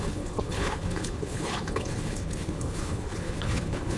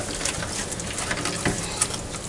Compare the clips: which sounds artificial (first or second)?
first